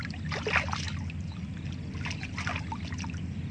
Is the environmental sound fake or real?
real